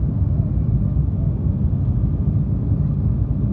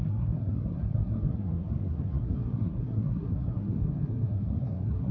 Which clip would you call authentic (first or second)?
first